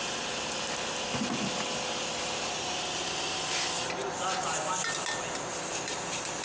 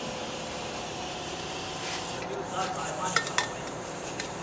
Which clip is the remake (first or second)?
second